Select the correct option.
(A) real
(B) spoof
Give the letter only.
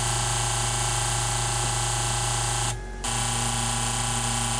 A